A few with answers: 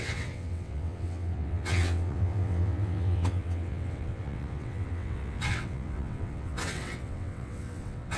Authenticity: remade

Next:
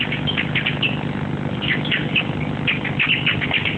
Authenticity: recorded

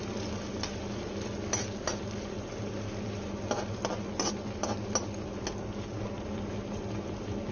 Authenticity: recorded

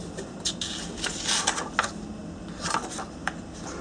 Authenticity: recorded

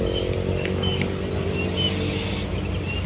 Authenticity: recorded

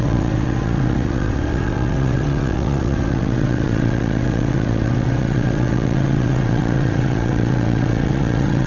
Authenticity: remade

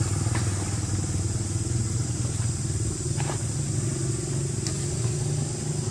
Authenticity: recorded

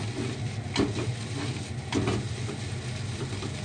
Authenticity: recorded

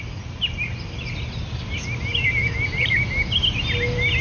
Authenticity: recorded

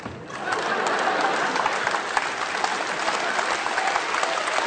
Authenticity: recorded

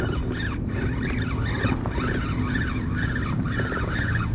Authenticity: recorded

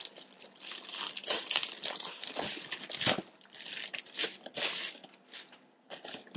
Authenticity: recorded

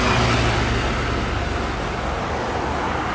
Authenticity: recorded